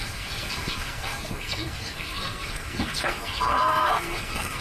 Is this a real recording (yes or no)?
no